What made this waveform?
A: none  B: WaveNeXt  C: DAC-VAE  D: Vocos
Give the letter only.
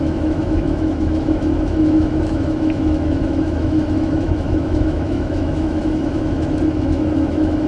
C